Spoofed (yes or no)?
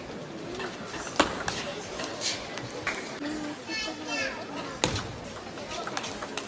no